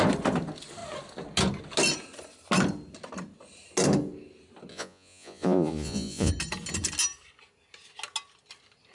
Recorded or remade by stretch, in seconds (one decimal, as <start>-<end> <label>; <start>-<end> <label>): 0.0-4.7 recorded; 4.7-6.3 remade; 6.3-8.9 recorded

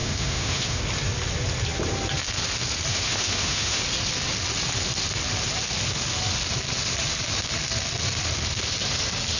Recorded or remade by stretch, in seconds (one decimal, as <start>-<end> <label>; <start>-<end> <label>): 0.0-0.8 remade; 0.8-2.9 recorded; 2.9-3.8 remade; 3.8-9.4 recorded

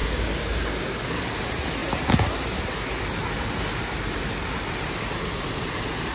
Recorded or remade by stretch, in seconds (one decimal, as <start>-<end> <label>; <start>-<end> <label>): 0.0-1.2 remade; 1.2-6.1 recorded

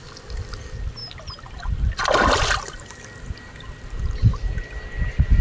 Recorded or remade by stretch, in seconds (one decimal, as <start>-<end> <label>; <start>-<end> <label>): 0.0-5.4 recorded

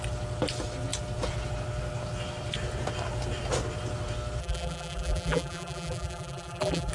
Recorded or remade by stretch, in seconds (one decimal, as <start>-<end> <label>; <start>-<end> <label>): 0.0-4.4 recorded; 4.4-6.9 remade